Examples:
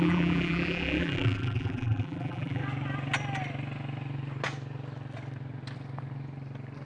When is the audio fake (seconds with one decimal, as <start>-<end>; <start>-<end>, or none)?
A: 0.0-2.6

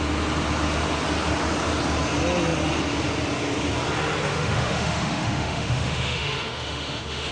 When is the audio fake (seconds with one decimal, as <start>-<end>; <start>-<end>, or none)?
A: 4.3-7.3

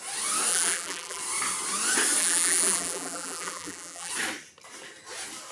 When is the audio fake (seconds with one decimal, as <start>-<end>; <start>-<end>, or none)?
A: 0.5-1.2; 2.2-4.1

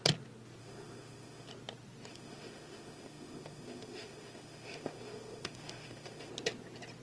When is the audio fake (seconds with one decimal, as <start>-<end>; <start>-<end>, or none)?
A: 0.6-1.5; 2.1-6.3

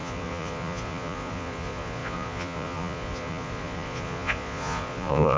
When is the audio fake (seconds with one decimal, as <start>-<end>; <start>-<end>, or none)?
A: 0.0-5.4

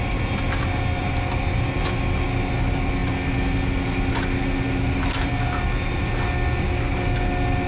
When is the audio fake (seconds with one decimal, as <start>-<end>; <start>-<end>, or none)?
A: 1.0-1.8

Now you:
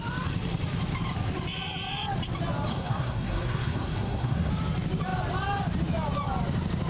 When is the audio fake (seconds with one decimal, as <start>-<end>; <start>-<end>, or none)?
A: 2.7-4.5